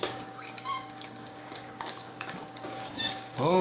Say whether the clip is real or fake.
fake